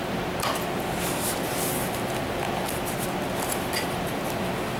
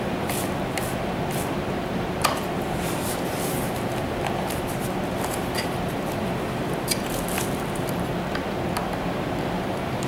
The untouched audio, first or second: first